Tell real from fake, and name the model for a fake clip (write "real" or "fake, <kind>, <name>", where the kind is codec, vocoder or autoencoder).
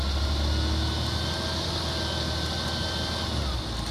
real